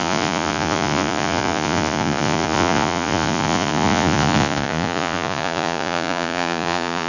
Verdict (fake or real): fake